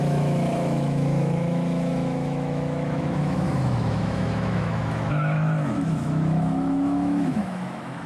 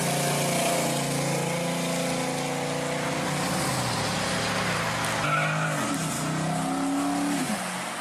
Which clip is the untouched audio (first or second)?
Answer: second